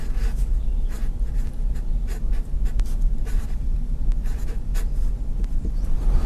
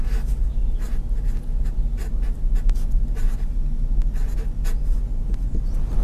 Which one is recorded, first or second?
second